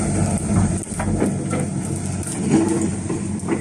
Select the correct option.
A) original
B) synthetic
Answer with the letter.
A